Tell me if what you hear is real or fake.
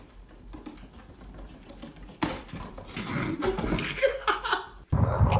real